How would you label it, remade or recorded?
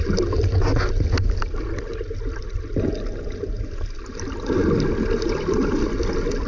recorded